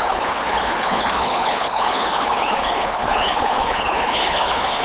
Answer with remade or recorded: remade